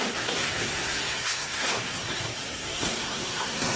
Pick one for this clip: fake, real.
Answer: fake